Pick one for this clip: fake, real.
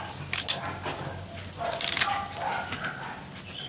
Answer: real